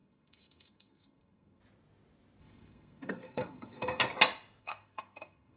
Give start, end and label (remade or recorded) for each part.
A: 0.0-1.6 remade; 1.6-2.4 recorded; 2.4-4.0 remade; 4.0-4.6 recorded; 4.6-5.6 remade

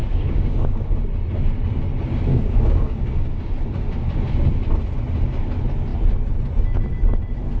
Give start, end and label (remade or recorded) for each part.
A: 0.0-0.8 remade; 0.8-2.3 recorded; 2.3-3.4 remade; 3.4-7.6 recorded

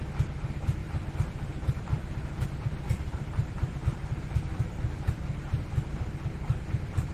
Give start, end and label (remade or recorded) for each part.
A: 0.0-0.8 recorded; 0.8-5.1 remade; 5.1-7.1 recorded

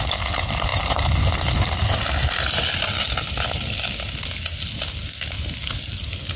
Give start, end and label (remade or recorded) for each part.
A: 0.0-0.7 recorded; 0.7-1.2 remade; 1.2-6.4 recorded

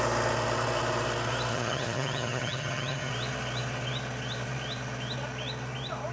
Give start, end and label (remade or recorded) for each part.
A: 0.0-1.5 recorded; 1.5-3.1 remade; 3.1-6.1 recorded

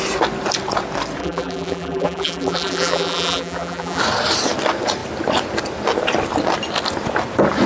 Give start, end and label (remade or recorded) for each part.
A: 0.0-1.2 recorded; 1.2-4.0 remade; 4.0-7.7 recorded

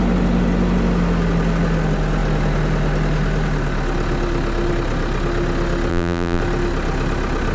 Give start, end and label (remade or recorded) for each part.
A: 0.0-5.9 recorded; 5.9-6.4 remade; 6.4-7.5 recorded